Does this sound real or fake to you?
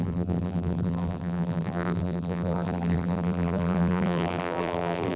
fake